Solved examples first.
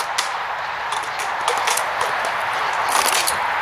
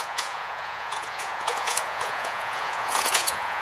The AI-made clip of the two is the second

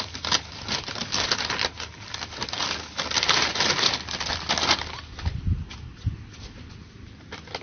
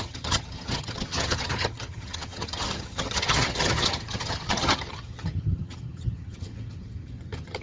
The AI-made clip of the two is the second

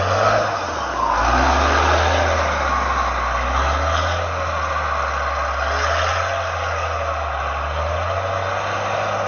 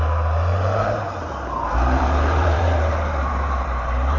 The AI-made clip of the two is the second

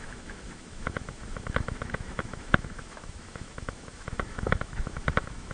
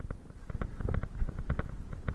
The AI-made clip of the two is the first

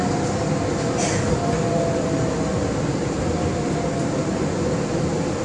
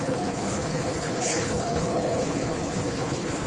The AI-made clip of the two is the second